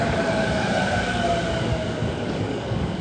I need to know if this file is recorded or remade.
remade